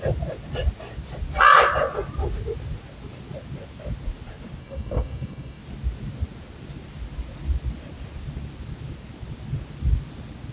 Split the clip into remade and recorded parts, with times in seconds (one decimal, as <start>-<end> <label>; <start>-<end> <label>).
0.0-4.6 recorded; 4.6-5.6 remade; 5.6-10.5 recorded